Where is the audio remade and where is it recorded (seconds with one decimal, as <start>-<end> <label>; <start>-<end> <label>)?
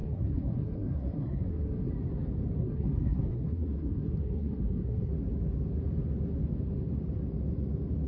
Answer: 0.0-1.9 remade; 1.9-2.6 recorded; 2.6-5.1 remade; 5.1-8.1 recorded